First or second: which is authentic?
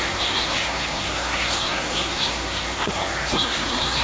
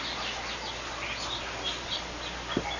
second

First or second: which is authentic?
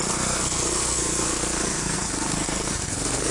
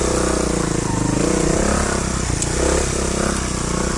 second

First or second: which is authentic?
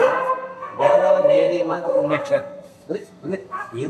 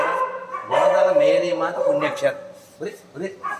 second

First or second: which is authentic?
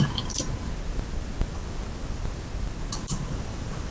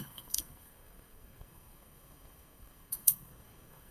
first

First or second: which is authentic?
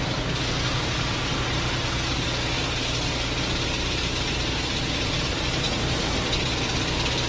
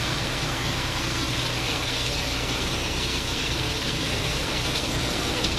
first